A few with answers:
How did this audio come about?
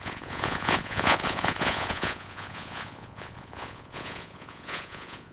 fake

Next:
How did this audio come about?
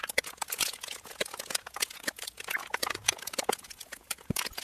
fake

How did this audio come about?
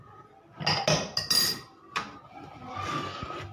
real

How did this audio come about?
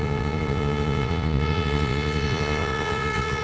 fake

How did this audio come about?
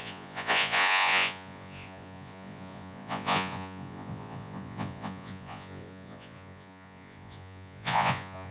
fake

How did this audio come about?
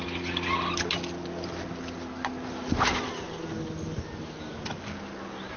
real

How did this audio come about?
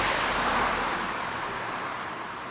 fake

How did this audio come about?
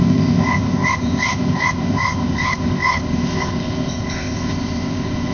fake